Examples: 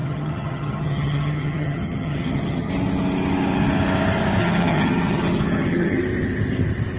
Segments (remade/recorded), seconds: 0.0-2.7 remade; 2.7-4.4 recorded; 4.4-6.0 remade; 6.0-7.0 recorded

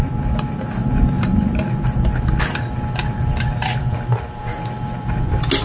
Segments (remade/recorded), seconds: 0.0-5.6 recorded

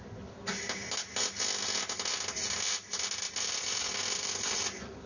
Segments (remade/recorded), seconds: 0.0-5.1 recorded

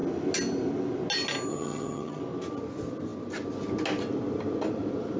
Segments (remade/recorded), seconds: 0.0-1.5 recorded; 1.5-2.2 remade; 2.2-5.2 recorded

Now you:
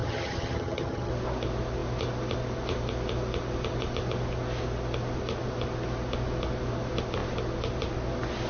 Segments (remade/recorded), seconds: 0.0-1.1 remade; 1.1-8.5 recorded

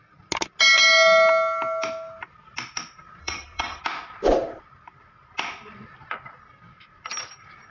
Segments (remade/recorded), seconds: 0.0-3.2 recorded; 3.2-3.8 remade; 3.8-7.7 recorded